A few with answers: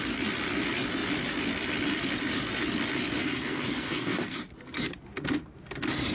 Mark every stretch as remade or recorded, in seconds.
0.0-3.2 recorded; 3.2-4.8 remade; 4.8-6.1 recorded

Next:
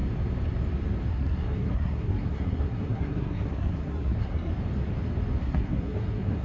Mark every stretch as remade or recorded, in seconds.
0.0-1.1 recorded; 1.1-4.5 remade; 4.5-5.4 recorded; 5.4-6.4 remade

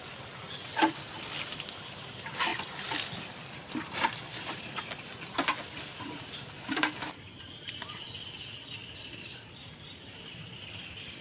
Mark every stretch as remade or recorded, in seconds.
0.0-11.2 recorded

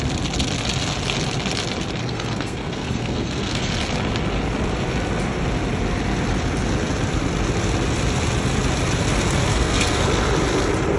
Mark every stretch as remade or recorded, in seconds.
0.0-2.0 recorded; 2.0-3.7 remade; 3.7-9.5 recorded; 9.5-10.0 remade; 10.0-11.0 recorded

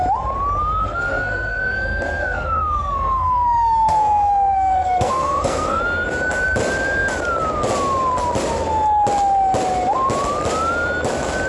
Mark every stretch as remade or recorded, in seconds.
0.0-0.8 recorded; 0.8-5.8 remade; 5.8-11.5 recorded

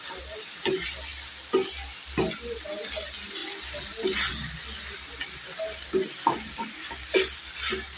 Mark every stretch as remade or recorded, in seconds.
0.0-8.0 recorded

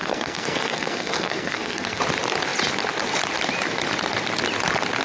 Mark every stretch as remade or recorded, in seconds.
0.0-2.0 remade; 2.0-5.0 recorded